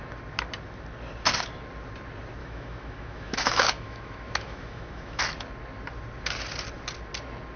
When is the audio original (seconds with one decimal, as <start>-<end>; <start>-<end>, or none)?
0.0-2.4; 5.2-7.6